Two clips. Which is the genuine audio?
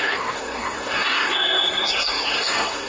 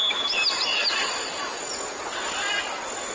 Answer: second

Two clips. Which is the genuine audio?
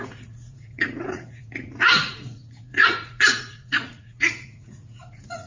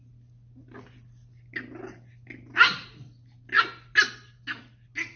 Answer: second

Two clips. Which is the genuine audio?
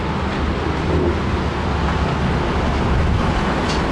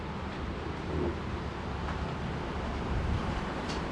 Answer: first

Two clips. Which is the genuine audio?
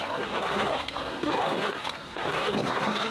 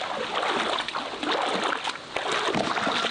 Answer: second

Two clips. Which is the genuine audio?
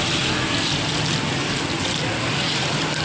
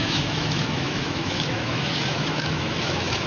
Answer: first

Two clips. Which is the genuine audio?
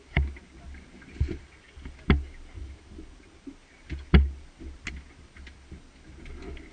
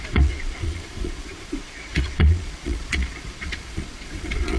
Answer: first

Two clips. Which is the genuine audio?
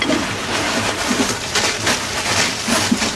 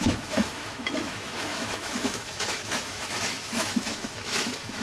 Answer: first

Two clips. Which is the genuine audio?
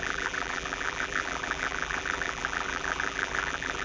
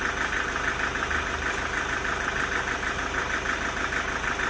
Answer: second